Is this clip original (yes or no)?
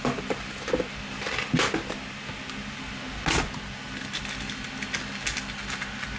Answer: yes